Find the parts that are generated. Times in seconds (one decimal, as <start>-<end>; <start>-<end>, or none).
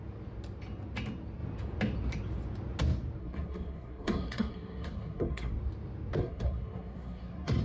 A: 3.2-5.5; 6.2-7.6